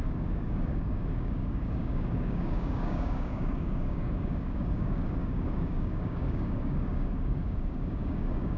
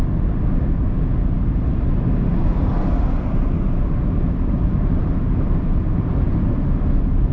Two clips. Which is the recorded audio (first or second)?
second